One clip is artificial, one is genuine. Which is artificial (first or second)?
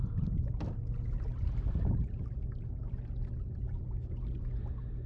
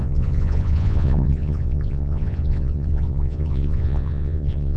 second